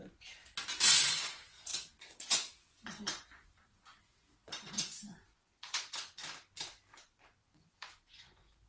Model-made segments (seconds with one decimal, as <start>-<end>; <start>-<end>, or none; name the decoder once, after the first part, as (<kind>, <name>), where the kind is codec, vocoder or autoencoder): 0.0-0.4 (vocoder, Vocos); 1.0-6.2; 7.2-8.7